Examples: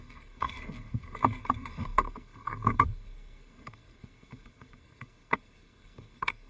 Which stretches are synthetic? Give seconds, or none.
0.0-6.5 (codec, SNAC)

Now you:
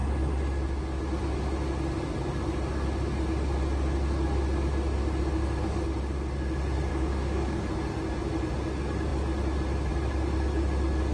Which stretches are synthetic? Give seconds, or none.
5.4-6.0 (codec, DAC); 6.9-7.7

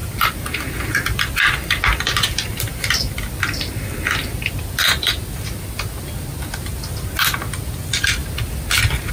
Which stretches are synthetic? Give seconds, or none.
0.0-5.1 (vocoder, BigVGAN v2)

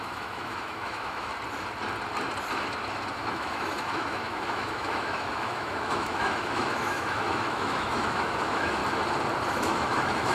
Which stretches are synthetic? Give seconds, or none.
0.0-1.3 (autoencoder, DAC-VAE); 3.1-8.8; 9.5-10.3

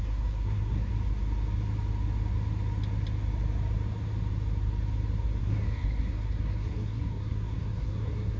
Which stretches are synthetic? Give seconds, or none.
0.0-0.9 (codec, SNAC); 5.4-8.4

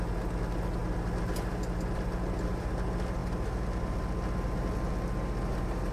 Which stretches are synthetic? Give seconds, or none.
none

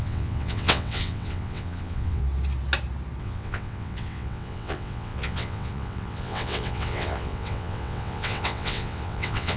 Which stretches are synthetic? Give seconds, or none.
0.0-2.2 (vocoder, WaveNeXt); 3.2-9.6

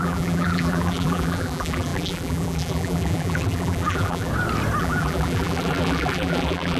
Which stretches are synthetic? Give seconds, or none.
0.0-4.3 (vocoder, BigVGAN v2); 4.8-6.8